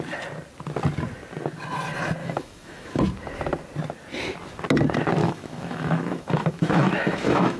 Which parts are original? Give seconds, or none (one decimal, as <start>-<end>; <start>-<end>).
0.0-2.2; 3.0-5.2